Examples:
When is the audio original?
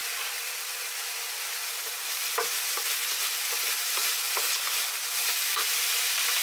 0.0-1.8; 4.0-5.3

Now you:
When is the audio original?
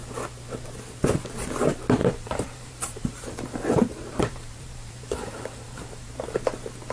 0.0-2.0; 6.1-6.9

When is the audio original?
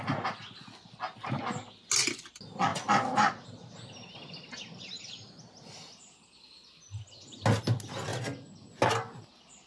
0.0-9.7